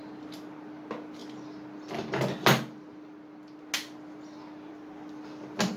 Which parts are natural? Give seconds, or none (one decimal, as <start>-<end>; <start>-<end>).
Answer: 0.0-5.8